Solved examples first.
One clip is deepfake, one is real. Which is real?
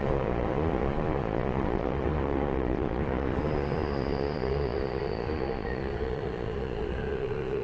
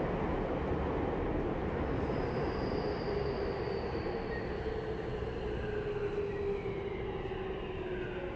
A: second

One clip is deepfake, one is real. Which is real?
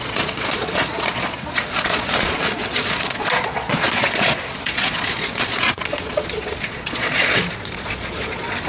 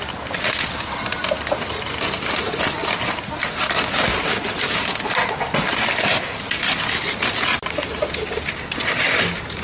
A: second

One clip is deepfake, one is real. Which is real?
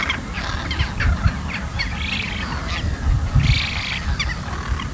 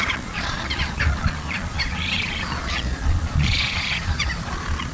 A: first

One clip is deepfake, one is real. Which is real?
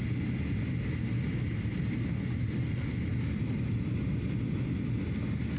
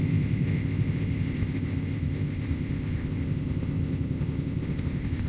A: first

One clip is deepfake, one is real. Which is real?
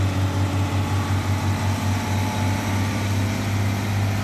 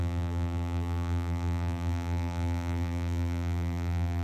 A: first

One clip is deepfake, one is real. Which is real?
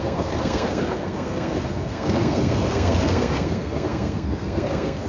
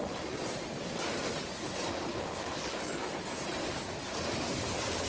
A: second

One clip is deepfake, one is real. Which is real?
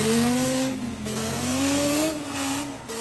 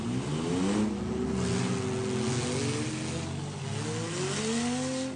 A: second